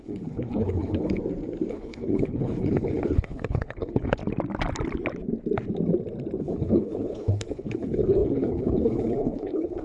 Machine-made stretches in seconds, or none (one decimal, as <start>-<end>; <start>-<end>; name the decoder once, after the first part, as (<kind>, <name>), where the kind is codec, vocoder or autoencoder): 0.0-1.2 (codec, HILCodec); 1.7-4.2; 6.4-9.8